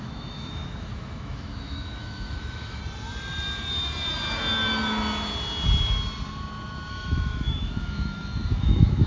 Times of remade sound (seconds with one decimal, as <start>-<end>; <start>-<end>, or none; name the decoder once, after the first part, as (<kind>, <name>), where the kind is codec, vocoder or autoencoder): 0.0-2.8 (autoencoder, DAC-VAE); 6.9-9.1